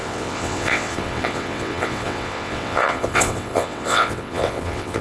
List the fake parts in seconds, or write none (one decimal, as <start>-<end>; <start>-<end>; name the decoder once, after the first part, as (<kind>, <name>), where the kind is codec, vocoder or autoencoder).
0.0-5.0 (vocoder, WaveNeXt)